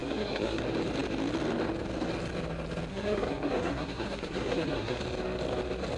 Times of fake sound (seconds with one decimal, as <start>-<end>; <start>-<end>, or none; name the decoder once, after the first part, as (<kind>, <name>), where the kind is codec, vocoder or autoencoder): 0.0-0.6 (codec, SNAC); 2.9-5.0